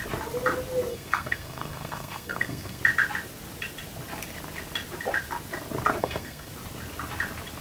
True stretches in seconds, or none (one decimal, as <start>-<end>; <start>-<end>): 0.0-0.9; 2.8-6.0; 6.5-7.6